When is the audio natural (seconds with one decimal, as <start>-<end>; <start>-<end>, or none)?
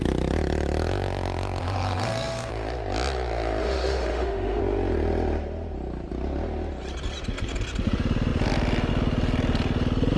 0.0-1.6; 2.5-3.6; 4.6-10.2